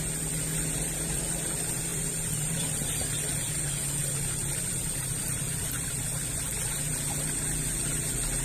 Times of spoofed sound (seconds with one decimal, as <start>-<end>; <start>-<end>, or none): 1.9-2.9; 4.0-6.0